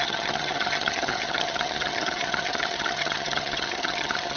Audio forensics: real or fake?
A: fake